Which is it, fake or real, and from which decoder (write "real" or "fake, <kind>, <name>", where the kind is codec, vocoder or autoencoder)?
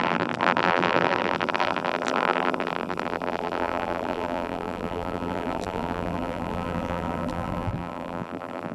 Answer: fake, vocoder, BigVGAN v2